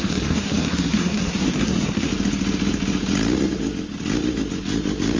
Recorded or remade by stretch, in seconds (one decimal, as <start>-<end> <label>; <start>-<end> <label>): 0.0-2.1 remade; 2.1-5.2 recorded